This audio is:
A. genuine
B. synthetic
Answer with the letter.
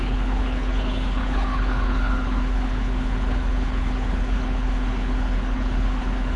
B